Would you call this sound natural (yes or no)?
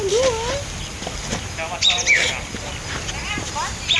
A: yes